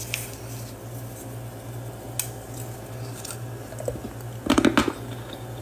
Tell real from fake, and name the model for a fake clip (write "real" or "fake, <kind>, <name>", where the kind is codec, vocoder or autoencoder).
real